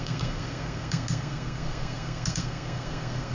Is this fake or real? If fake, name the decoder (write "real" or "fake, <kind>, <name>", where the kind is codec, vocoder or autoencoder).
fake, codec, SNAC